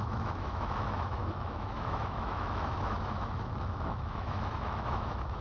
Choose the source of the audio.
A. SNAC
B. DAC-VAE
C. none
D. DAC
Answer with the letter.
B